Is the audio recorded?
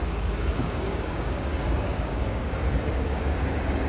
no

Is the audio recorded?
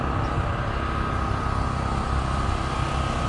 yes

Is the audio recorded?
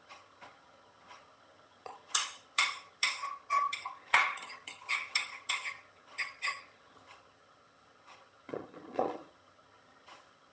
no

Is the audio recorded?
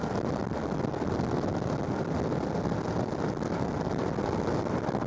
yes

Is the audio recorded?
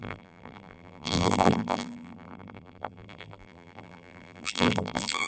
no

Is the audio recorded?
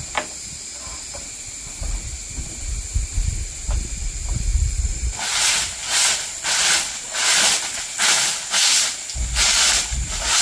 yes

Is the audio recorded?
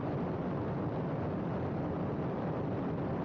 yes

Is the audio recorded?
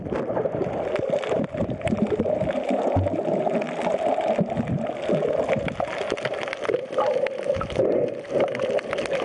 yes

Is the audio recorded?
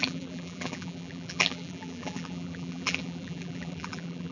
no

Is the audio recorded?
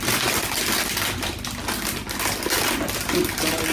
yes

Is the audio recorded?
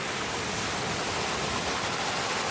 yes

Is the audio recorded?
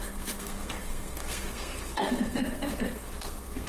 no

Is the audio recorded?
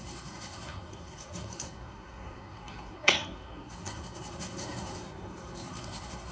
no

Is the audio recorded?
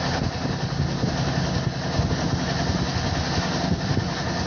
yes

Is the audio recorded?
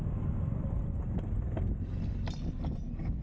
yes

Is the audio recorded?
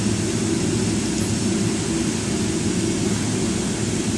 yes